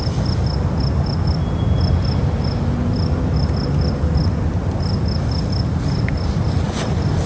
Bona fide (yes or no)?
yes